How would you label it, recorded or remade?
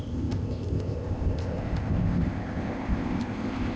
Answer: remade